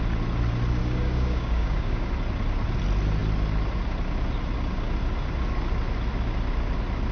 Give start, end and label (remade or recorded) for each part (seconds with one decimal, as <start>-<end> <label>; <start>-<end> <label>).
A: 0.0-0.8 recorded; 0.8-2.1 remade; 2.1-7.1 recorded

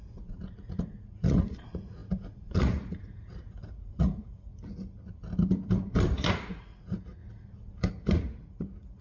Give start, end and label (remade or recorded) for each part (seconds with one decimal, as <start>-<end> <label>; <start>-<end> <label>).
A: 0.0-4.5 remade; 4.5-6.3 recorded; 6.3-7.2 remade; 7.2-8.1 recorded; 8.1-9.0 remade

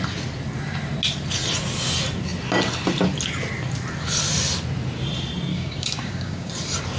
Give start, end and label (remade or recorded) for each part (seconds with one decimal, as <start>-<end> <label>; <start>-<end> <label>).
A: 0.0-5.5 recorded; 5.5-6.5 remade; 6.5-7.0 recorded

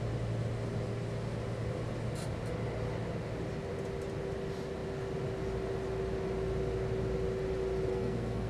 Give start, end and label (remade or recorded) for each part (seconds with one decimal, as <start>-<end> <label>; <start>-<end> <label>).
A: 0.0-7.9 recorded; 7.9-8.5 remade